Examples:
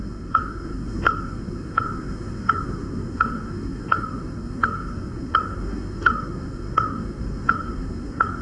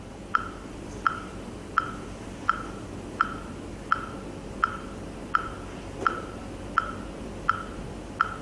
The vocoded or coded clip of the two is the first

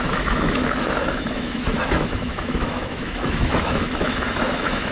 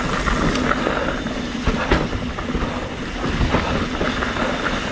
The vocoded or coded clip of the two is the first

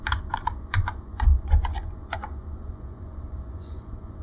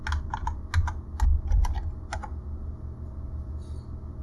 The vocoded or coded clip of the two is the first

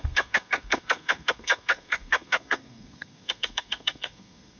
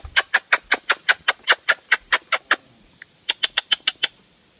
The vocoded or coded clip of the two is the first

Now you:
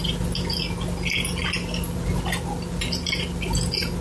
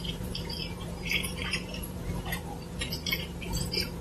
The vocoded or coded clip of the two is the second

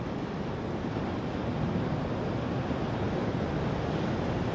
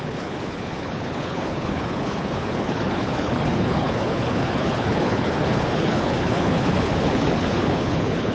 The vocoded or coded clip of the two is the second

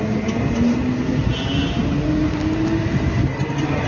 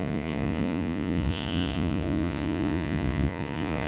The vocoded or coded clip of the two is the second